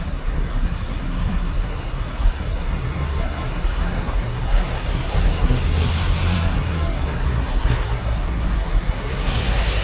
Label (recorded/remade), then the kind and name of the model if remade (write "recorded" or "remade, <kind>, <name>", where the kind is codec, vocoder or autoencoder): remade, codec, SNAC